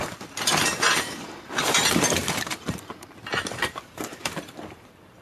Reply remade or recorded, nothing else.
remade